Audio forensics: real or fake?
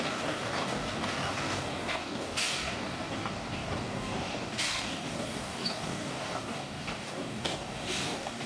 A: fake